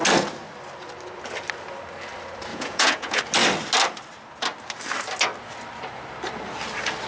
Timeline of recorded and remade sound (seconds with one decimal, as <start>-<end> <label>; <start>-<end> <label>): 0.0-2.5 recorded; 2.5-3.2 remade; 3.2-7.1 recorded